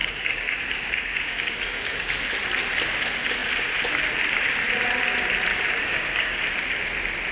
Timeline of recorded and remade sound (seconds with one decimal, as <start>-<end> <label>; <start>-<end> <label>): 0.0-2.2 remade; 2.2-5.5 recorded; 5.5-6.4 remade; 6.4-7.3 recorded